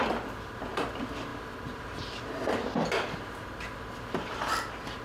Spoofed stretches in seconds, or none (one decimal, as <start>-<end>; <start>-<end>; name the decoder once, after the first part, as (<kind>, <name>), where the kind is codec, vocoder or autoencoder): none